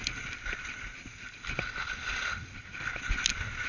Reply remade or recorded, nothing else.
recorded